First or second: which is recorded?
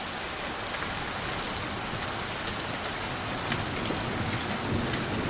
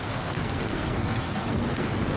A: first